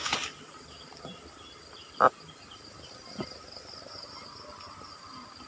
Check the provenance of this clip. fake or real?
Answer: real